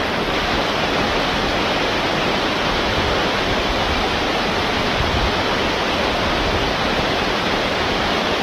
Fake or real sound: real